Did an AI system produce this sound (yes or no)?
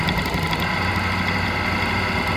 no